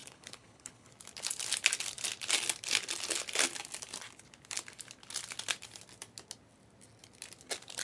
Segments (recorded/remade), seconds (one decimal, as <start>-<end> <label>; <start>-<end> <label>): 0.0-0.9 remade; 0.9-7.8 recorded